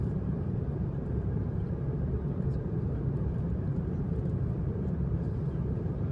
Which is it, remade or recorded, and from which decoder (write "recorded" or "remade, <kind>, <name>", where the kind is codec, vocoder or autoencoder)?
remade, vocoder, BigVGAN v2